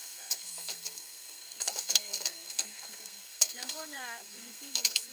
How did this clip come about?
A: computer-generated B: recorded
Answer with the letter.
A